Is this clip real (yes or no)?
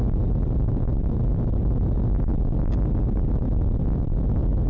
yes